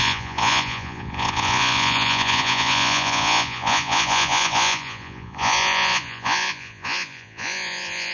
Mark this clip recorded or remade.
remade